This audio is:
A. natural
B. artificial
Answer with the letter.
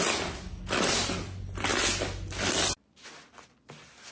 A